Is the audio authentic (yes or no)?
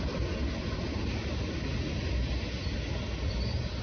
yes